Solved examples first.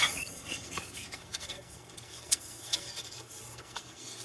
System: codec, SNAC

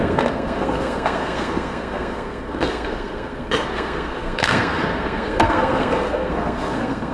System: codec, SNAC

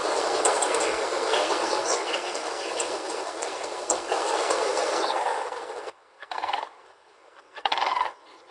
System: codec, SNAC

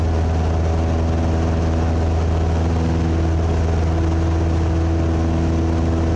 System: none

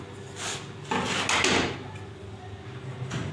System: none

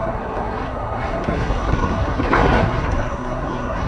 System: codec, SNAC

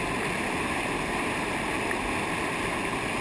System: none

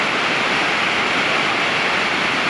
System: none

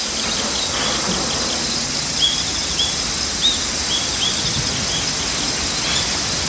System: none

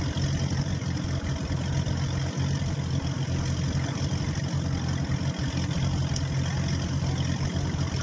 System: none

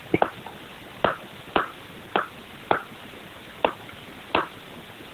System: none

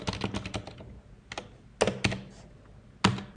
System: none